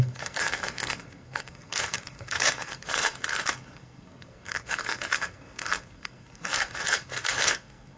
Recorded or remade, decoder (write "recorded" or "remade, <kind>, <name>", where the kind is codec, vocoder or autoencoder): remade, codec, SNAC